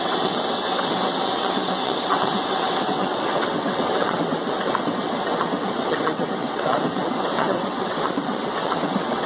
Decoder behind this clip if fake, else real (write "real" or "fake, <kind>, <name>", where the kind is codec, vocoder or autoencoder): fake, vocoder, WaveNeXt